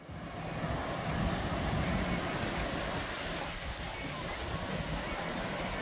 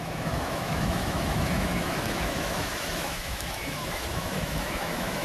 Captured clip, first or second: first